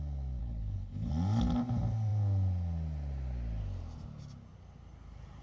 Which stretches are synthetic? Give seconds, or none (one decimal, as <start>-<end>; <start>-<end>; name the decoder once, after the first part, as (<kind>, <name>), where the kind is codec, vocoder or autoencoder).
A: 0.4-1.1 (codec, HILCodec)